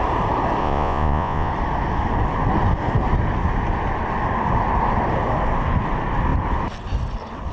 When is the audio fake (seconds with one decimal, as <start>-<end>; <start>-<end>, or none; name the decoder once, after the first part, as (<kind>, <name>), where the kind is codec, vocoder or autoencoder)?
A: 0.6-1.5 (vocoder, Vocos)